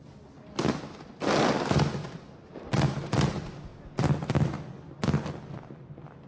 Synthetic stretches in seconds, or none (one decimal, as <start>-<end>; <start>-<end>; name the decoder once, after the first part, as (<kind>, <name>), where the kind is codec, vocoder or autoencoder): none